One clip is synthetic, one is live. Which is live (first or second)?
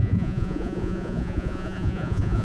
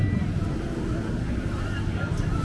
second